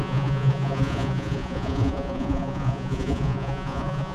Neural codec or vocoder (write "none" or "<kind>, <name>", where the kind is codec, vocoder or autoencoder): vocoder, Vocos